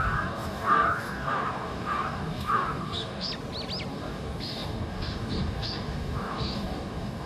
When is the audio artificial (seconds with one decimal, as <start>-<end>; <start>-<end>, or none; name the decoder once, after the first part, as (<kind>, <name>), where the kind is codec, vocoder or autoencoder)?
0.0-3.3 (codec, DAC); 3.9-7.3